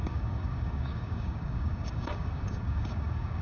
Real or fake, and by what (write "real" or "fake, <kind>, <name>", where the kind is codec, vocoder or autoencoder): fake, codec, DAC